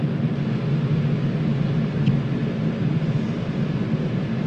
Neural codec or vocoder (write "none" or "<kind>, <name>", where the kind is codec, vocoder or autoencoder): none